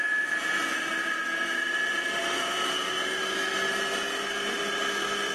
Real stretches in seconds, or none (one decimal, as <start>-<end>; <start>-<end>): 0.0-0.7; 2.2-5.3

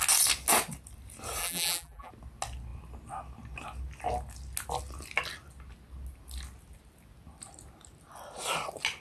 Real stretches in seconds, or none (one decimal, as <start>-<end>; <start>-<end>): 0.0-1.4; 2.1-9.0